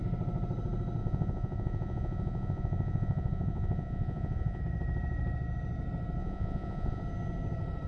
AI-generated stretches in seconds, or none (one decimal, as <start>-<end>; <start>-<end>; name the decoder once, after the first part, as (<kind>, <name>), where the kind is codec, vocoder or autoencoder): 1.0-4.6 (vocoder, Vocos); 6.2-7.0